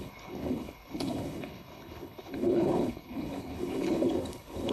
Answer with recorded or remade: remade